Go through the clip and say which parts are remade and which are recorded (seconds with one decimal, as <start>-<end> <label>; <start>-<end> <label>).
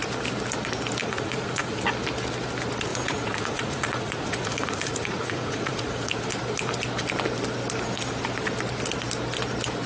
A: 0.0-1.0 recorded; 1.0-1.8 remade; 1.8-2.9 recorded; 2.9-6.2 remade; 6.2-9.9 recorded